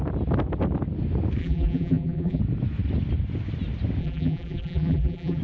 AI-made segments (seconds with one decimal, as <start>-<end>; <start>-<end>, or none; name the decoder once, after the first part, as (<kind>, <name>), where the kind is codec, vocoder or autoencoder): 1.4-2.4 (vocoder, BigVGAN v2); 4.0-5.4